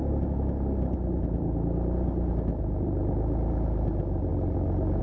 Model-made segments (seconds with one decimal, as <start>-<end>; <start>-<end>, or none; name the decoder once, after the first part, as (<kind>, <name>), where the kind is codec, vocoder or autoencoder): none